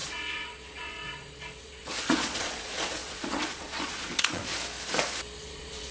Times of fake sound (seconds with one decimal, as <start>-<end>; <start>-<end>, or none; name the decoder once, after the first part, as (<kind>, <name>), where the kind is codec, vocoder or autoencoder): 0.0-4.5 (vocoder, Vocos); 5.4-5.9